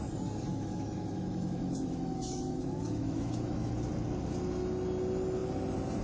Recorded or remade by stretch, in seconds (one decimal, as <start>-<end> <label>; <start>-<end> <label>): 0.0-0.5 recorded; 0.5-3.7 remade; 3.7-6.0 recorded